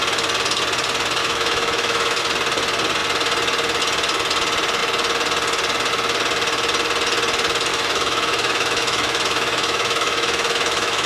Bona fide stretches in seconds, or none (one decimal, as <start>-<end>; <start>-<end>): 0.0-1.2; 2.2-7.7